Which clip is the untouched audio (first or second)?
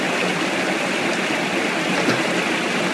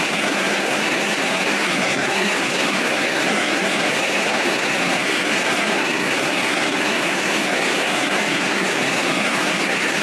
first